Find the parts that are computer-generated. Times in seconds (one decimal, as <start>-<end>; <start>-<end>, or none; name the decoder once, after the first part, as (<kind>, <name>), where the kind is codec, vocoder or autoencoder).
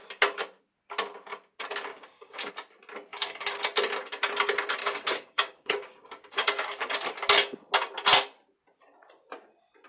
1.9-2.5 (codec, DAC); 3.1-3.6; 4.8-6.9